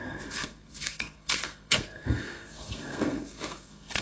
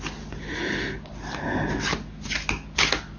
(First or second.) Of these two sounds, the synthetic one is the first